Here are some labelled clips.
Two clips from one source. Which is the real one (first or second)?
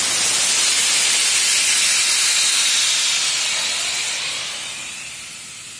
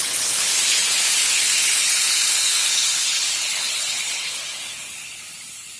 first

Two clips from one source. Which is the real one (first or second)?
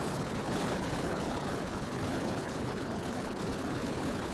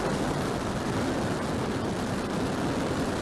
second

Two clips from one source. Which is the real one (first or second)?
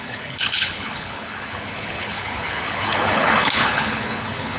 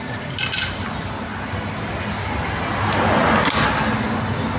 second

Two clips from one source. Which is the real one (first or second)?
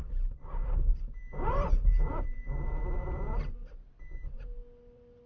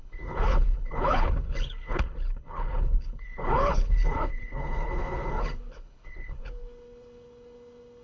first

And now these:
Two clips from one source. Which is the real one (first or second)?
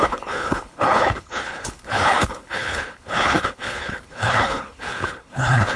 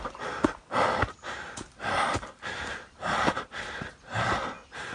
second